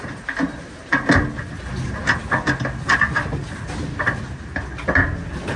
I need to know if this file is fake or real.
real